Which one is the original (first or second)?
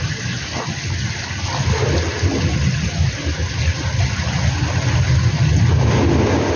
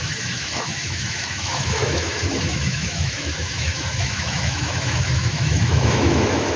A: first